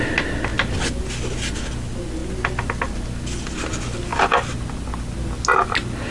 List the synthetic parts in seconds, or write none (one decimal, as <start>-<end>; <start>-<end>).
none